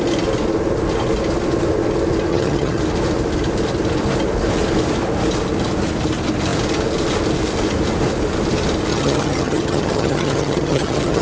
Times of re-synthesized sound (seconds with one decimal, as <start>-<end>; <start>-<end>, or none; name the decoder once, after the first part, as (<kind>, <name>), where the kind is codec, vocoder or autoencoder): 2.3-2.8 (vocoder, HiFi-GAN); 8.9-11.2

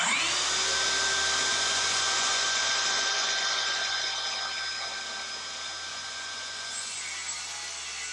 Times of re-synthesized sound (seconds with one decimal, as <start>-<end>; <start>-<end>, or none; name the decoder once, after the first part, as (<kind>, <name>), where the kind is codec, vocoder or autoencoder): 1.5-4.1 (vocoder, Vocos); 5.9-7.0

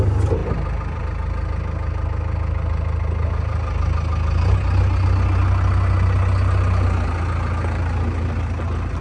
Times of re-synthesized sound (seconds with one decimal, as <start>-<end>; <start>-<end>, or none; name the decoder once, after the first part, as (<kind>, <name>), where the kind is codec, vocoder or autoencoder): none

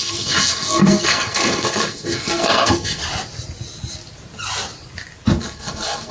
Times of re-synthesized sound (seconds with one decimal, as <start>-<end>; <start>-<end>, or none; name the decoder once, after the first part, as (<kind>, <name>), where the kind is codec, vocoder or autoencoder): 0.0-3.0 (codec, SNAC); 5.4-6.1

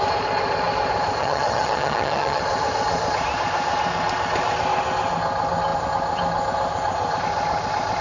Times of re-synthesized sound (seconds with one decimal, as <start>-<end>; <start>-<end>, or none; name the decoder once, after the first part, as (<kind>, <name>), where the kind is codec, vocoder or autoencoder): 1.2-2.4 (vocoder, HiFi-GAN)

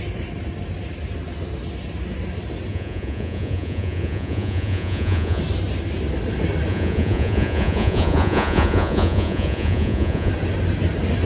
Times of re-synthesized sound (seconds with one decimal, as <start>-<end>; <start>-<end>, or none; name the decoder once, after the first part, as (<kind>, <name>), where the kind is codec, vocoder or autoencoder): 2.7-5.4 (vocoder, Vocos); 6.7-10.3